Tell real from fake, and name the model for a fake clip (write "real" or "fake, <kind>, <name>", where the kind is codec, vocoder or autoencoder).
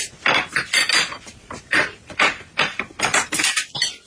real